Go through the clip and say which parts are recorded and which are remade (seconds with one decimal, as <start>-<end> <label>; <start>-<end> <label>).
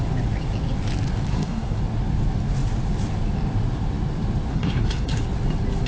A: 0.0-1.3 recorded; 1.3-1.8 remade; 1.8-4.5 recorded; 4.5-5.2 remade; 5.2-5.9 recorded